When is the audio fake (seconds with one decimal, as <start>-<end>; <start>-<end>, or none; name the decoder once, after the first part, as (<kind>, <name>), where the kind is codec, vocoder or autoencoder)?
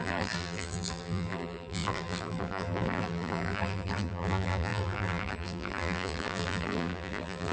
0.0-7.5 (vocoder, BigVGAN v2)